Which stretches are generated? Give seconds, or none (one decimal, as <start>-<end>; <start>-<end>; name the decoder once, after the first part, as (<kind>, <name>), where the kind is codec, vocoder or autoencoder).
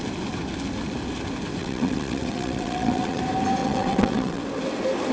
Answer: 1.6-3.2 (vocoder, WaveNeXt); 3.6-4.4